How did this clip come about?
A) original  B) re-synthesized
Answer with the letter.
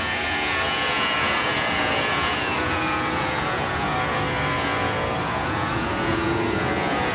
B